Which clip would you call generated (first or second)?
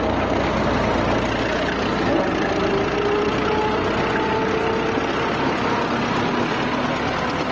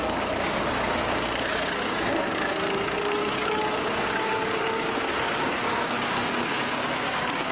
second